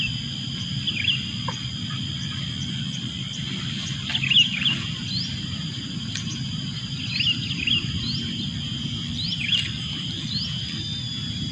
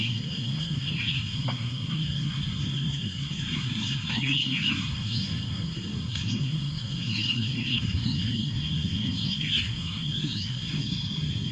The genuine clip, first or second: first